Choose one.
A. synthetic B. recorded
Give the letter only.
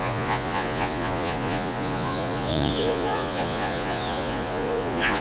A